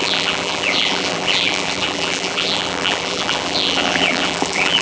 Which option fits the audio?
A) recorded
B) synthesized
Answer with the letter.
B